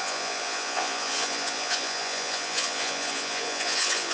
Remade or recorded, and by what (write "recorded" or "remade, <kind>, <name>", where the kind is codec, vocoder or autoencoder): remade, vocoder, Vocos